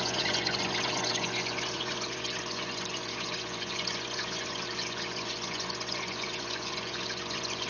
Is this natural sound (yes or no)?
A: no